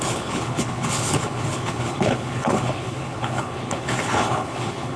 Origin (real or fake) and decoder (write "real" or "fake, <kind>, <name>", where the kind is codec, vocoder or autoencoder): fake, codec, HILCodec